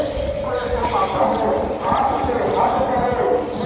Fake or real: real